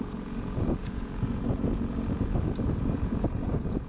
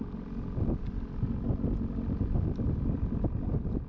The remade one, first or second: first